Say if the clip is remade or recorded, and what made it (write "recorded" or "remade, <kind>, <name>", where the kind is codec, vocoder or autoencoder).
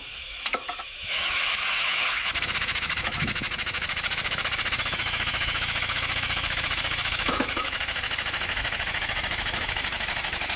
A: remade, autoencoder, DAC-VAE